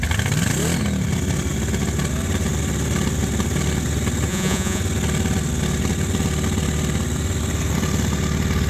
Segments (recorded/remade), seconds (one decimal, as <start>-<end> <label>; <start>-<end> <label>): 0.0-4.3 recorded; 4.3-4.8 remade; 4.8-8.7 recorded